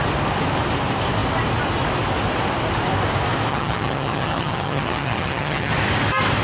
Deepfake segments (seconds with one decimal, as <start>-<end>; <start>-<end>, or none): 3.5-5.7